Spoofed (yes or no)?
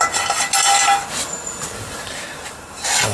no